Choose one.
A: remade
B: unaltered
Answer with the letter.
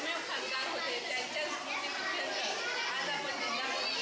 B